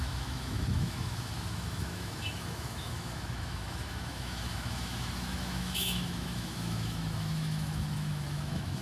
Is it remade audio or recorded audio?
remade